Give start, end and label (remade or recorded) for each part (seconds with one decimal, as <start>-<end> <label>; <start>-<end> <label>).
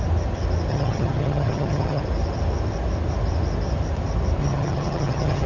0.0-0.7 recorded; 0.7-2.0 remade; 2.0-4.4 recorded; 4.4-5.5 remade